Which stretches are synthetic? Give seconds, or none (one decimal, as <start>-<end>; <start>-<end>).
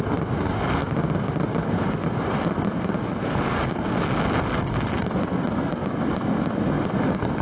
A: none